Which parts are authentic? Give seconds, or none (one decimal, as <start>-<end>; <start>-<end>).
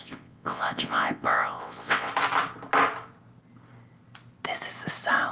2.1-5.3